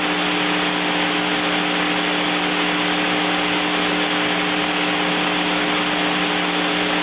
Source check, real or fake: real